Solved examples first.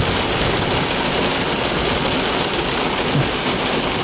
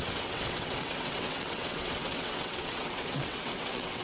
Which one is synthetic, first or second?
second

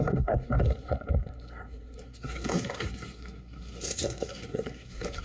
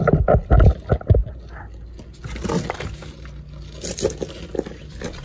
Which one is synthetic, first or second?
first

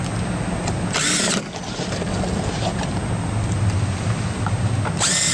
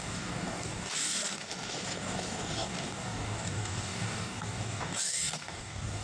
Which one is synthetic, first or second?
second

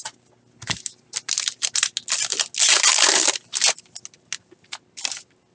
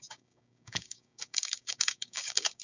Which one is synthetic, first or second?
second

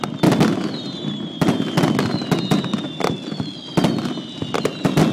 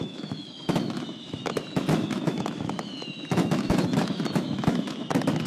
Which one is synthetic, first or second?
second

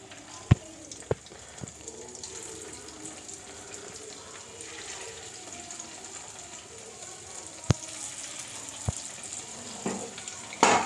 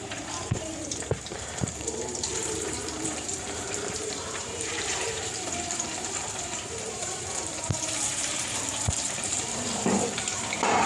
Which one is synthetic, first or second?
second